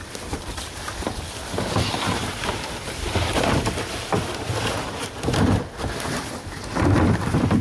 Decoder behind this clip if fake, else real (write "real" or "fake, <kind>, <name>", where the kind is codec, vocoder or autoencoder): fake, vocoder, BigVGAN v2